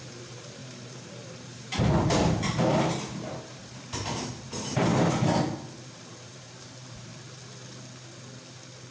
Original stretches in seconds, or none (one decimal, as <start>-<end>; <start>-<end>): 4.9-5.9; 7.1-8.9